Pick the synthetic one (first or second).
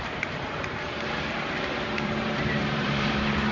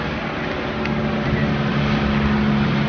first